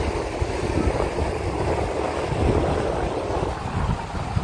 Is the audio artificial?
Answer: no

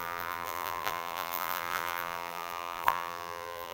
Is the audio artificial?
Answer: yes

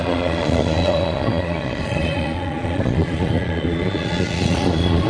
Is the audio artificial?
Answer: yes